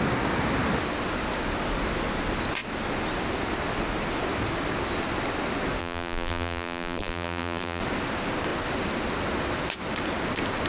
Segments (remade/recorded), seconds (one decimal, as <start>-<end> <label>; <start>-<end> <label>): 0.0-5.8 recorded; 5.8-7.8 remade; 7.8-10.7 recorded